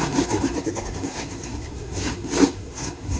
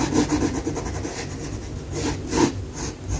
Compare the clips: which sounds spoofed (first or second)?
first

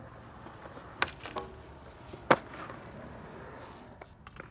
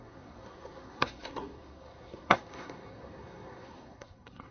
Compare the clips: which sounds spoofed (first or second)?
second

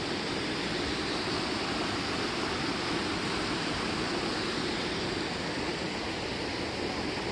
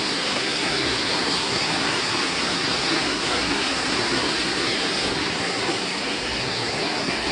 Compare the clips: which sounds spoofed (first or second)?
second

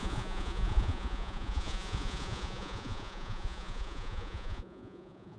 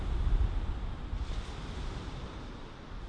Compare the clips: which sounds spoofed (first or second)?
first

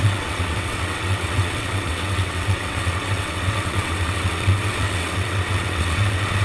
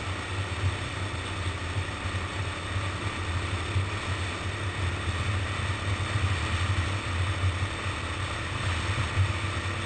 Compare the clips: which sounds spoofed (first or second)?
first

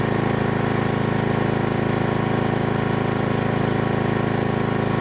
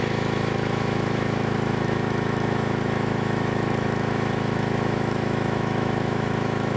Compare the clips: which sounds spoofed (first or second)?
second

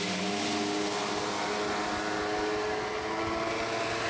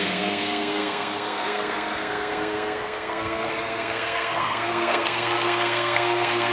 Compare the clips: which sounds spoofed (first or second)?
second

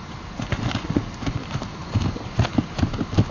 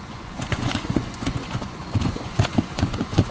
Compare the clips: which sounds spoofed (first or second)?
second